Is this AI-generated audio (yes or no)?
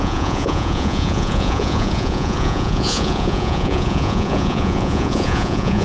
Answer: yes